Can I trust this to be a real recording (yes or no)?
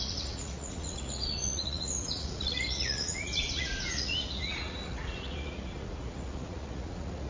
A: no